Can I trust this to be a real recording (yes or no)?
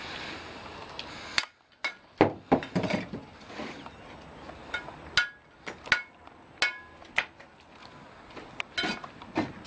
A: yes